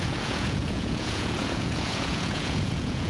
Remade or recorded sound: remade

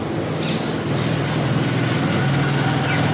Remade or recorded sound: recorded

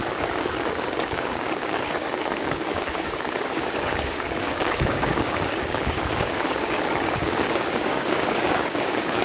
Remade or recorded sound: remade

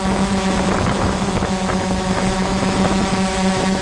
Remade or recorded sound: remade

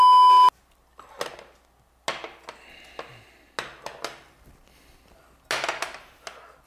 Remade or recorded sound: recorded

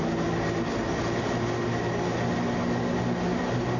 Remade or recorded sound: recorded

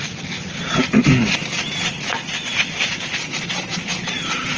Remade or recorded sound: recorded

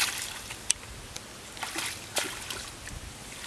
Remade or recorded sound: recorded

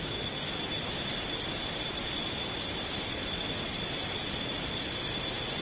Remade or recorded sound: recorded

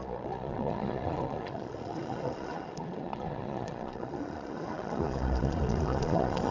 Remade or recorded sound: remade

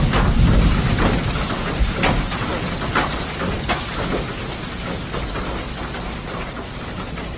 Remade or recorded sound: recorded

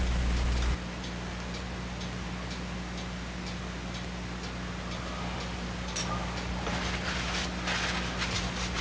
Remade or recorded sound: recorded